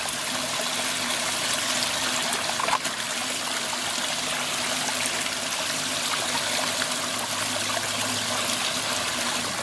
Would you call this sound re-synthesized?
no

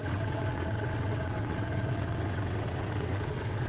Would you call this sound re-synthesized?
yes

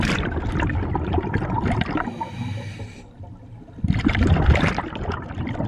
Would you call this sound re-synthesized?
no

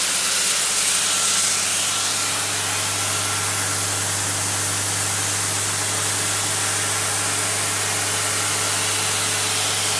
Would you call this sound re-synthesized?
no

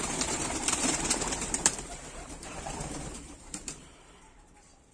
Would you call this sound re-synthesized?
yes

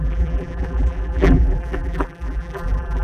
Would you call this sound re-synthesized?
yes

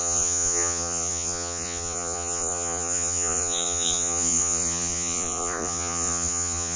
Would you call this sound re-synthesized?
yes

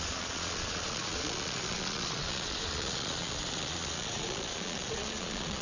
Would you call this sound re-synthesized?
yes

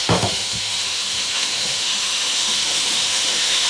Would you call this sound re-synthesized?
yes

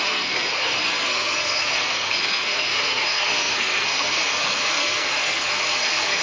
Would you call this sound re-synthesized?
yes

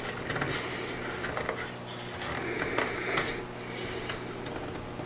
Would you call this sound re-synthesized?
no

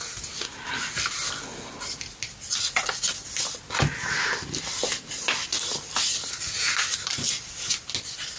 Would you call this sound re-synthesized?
no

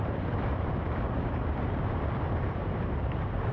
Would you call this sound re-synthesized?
yes